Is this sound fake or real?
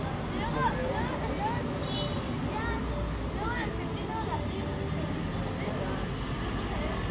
real